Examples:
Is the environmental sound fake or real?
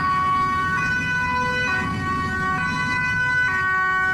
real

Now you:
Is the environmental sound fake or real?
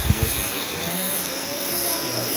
fake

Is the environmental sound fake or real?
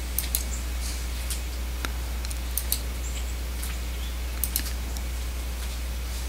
real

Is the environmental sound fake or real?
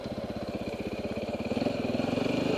fake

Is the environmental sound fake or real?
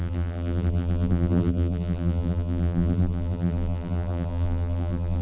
fake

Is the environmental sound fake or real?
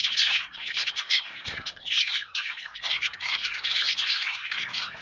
fake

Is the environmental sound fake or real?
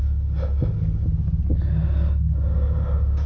real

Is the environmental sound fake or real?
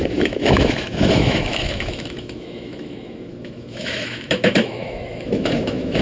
fake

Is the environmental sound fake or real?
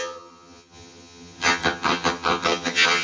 fake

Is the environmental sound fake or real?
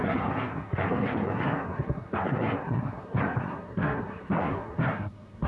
fake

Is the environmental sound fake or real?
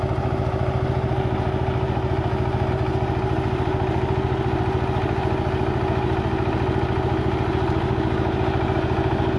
real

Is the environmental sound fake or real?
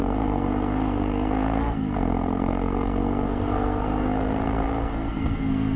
fake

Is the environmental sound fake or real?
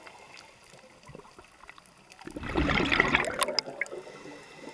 real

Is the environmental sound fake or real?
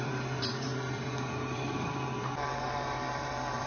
fake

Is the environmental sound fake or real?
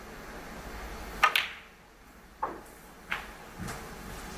real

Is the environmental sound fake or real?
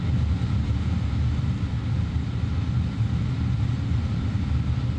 real